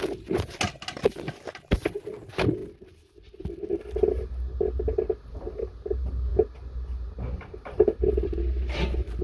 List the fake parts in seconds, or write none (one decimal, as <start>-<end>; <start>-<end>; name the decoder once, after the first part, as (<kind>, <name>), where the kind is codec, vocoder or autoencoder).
none